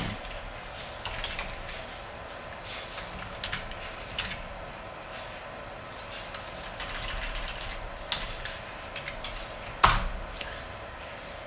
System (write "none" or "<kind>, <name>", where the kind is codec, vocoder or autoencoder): none